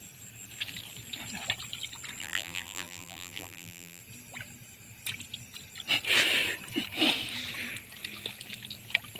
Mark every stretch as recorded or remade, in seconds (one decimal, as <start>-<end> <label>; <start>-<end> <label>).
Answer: 0.0-2.2 recorded; 2.2-4.0 remade; 4.0-9.2 recorded